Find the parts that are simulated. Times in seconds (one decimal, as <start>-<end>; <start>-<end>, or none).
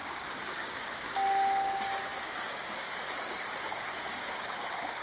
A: 0.0-5.0